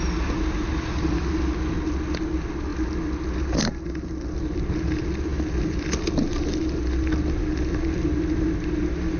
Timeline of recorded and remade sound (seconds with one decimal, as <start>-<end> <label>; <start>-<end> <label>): 0.0-5.3 recorded; 5.3-6.0 remade; 6.0-9.2 recorded